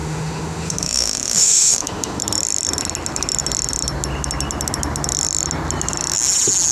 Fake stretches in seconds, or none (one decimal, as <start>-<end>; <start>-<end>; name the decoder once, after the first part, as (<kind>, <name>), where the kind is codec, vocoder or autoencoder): 0.0-2.2 (autoencoder, DAC-VAE)